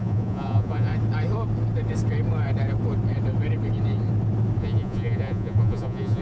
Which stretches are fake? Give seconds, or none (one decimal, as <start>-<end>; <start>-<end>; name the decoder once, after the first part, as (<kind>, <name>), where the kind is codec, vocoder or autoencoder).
0.0-0.9 (vocoder, Vocos); 4.6-6.2